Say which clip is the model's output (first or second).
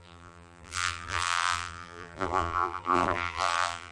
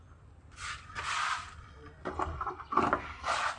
first